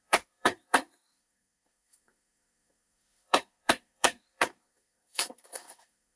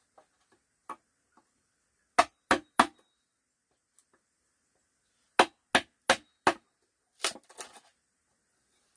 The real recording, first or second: second